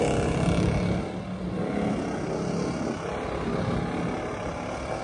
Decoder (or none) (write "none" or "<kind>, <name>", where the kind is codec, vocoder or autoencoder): none